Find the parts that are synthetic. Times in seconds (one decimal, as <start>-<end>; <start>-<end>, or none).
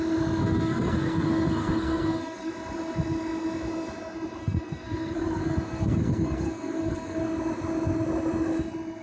0.4-2.5; 4.4-7.2